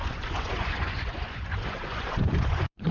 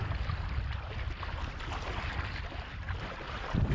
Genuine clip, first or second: second